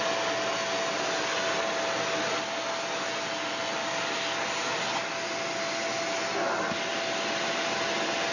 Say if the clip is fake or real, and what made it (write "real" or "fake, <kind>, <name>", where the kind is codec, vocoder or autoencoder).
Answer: real